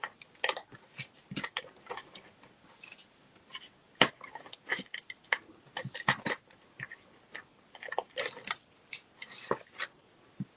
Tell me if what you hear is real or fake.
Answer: fake